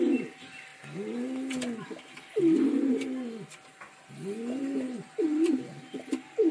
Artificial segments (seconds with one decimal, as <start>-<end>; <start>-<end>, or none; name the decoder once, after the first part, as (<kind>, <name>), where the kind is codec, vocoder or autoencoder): none